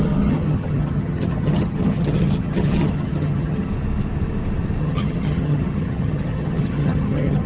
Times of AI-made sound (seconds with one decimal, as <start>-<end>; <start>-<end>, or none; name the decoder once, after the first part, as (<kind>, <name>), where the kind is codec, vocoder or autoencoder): 0.0-3.7 (vocoder, HiFi-GAN); 4.8-7.5